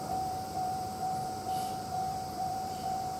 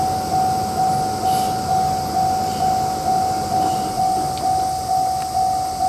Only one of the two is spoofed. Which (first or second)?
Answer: first